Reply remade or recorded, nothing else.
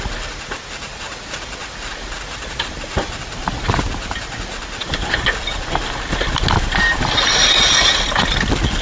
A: recorded